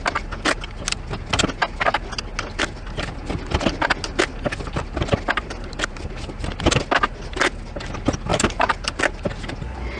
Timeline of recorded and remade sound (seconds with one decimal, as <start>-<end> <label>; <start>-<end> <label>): 0.0-5.4 recorded; 5.4-6.1 remade; 6.1-8.3 recorded; 8.3-9.0 remade; 9.0-10.0 recorded